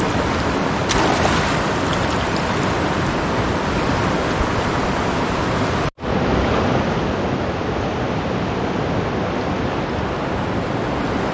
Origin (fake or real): real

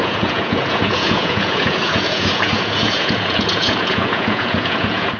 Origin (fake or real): fake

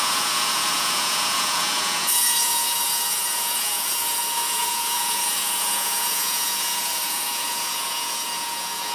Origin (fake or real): fake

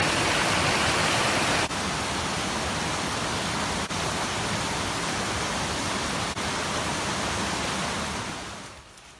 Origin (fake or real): real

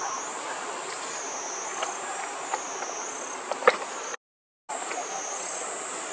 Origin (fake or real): real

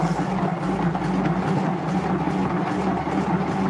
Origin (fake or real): real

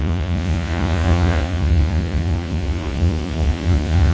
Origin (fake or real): fake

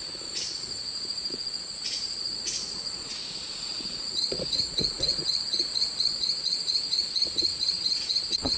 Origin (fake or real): fake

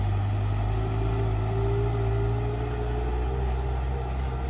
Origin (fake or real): real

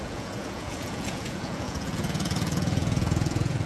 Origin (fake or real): fake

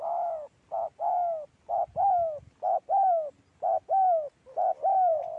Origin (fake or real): real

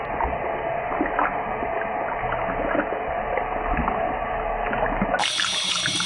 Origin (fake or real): real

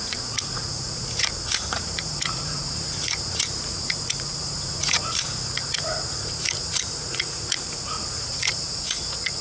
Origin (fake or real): fake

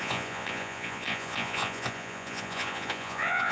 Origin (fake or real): fake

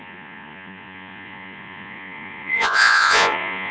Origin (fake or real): fake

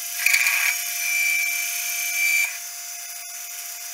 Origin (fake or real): real